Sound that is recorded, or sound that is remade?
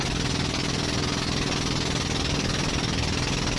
recorded